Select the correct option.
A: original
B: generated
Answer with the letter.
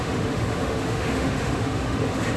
B